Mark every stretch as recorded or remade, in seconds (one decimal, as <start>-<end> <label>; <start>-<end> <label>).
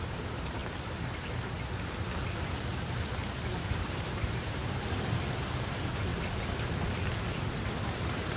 0.0-0.6 remade; 0.6-3.4 recorded; 3.4-4.6 remade; 4.6-5.3 recorded; 5.3-6.1 remade; 6.1-7.8 recorded; 7.8-8.4 remade